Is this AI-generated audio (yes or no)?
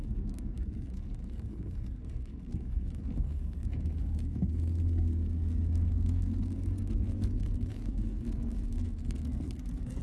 yes